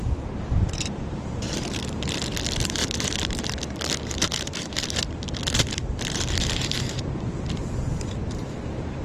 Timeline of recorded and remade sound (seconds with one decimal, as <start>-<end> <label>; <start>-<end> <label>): 0.0-9.0 remade